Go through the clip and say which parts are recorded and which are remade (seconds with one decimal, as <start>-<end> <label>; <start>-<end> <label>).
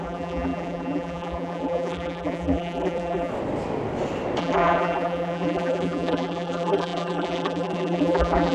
0.0-3.3 remade; 3.3-4.4 recorded; 4.4-8.5 remade